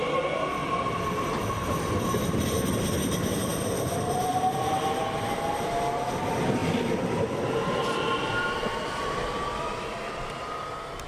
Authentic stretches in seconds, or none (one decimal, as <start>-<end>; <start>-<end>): 0.0-0.6; 2.7-3.5; 4.2-6.6; 7.2-8.7; 9.2-11.1